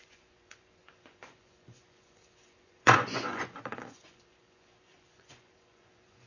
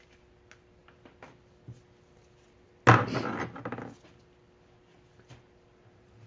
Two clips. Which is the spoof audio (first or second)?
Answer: first